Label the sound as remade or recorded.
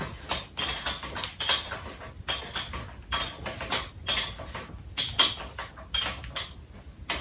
recorded